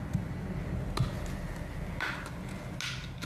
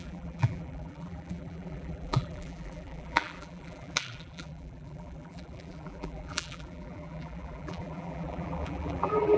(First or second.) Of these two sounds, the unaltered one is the first